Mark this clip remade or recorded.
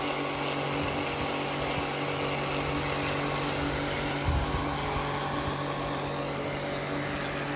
recorded